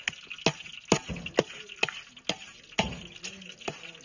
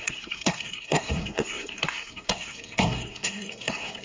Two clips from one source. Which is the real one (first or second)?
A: first